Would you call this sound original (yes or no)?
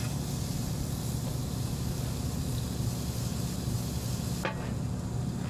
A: yes